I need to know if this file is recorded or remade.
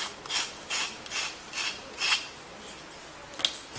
recorded